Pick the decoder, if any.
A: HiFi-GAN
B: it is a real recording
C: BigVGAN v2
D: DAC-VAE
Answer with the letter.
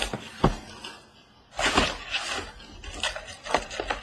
B